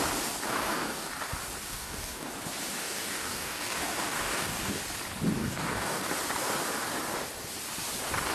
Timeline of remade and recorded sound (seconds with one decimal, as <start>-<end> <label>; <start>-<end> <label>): 0.0-0.5 recorded; 0.5-1.1 remade; 1.1-1.7 recorded; 1.7-2.3 remade; 2.3-2.7 recorded; 2.7-4.8 remade; 4.8-5.4 recorded; 5.4-6.1 remade; 6.1-8.3 recorded